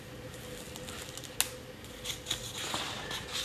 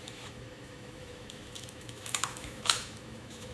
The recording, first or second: first